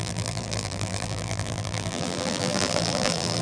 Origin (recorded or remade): remade